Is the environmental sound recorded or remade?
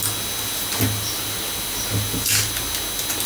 recorded